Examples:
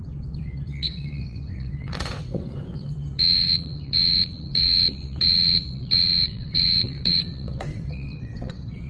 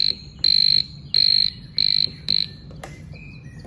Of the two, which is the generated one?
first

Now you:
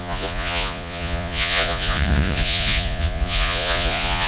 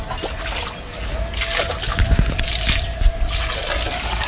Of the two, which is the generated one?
first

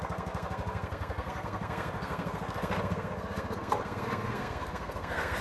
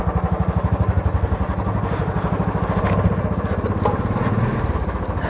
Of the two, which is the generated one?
first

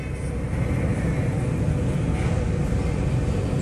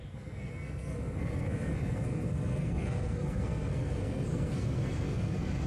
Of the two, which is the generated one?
second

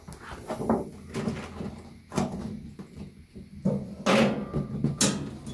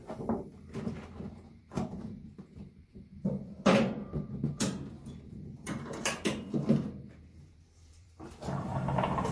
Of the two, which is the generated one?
second